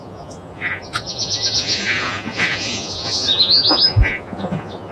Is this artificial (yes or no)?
yes